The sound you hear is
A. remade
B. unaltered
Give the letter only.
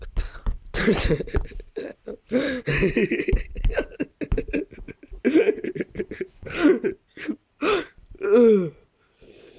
B